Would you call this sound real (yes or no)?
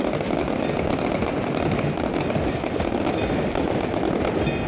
yes